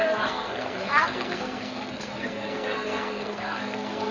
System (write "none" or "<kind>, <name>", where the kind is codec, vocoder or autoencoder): codec, SNAC